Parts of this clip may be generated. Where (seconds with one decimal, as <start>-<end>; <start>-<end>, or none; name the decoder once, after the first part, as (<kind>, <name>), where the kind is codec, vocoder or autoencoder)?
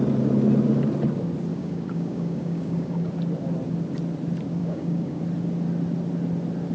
1.5-3.1 (codec, DAC); 4.6-5.2